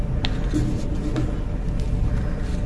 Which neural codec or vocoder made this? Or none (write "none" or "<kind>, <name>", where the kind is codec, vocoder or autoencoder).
none